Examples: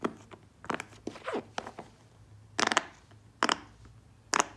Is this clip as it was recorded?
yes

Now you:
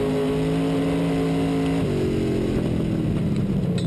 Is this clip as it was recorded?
yes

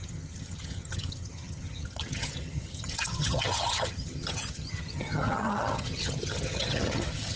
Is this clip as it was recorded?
no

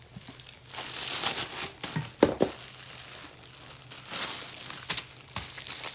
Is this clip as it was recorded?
yes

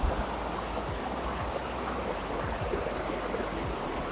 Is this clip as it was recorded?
yes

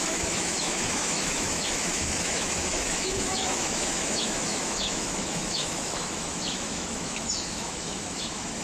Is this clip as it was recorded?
no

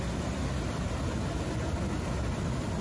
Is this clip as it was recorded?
yes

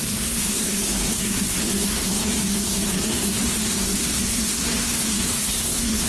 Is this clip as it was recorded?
no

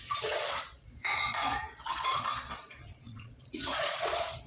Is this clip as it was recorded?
no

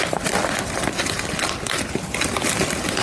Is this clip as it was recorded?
yes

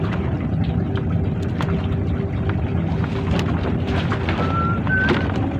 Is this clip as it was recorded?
yes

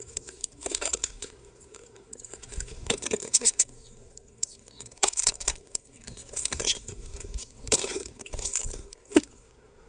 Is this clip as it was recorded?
no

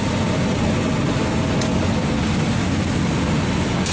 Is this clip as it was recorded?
yes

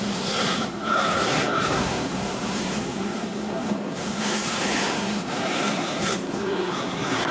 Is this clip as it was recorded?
no